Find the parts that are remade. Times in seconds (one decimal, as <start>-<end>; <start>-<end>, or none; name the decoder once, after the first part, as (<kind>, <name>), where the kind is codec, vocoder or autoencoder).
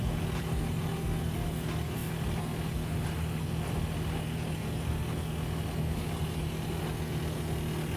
none